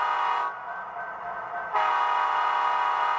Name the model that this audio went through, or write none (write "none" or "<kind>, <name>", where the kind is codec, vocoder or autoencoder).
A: none